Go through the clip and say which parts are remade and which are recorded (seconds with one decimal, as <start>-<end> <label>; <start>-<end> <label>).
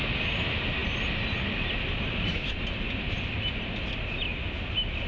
0.0-5.1 recorded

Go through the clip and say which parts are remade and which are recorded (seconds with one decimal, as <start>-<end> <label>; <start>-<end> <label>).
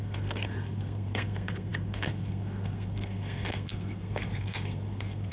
0.0-5.3 remade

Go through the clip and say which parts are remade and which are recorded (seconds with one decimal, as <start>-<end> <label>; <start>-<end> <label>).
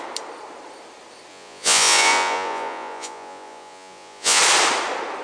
0.0-1.3 recorded; 1.3-4.4 remade; 4.4-5.2 recorded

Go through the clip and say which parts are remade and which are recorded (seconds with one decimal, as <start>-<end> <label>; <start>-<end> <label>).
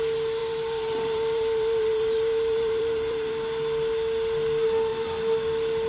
0.0-0.4 recorded; 0.4-3.3 remade; 3.3-5.9 recorded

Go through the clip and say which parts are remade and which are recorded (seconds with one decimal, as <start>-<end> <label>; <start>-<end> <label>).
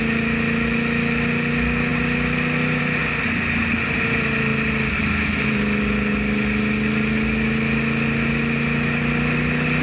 0.0-9.8 recorded